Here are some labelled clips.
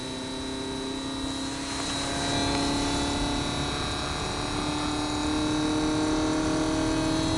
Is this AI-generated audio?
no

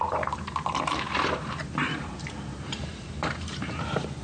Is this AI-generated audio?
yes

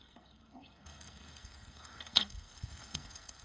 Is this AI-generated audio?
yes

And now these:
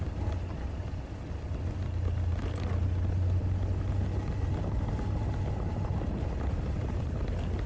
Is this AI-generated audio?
no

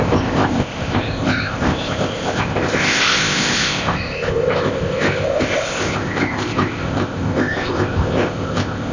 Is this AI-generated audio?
yes